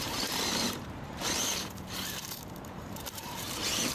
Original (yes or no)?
no